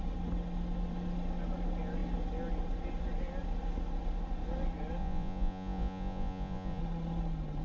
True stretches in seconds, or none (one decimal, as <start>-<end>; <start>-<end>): 0.0-5.0; 6.8-7.6